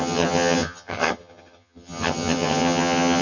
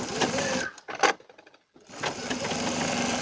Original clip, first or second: second